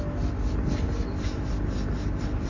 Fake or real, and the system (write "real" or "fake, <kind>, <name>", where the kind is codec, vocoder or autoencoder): real